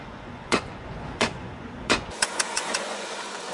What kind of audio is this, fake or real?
fake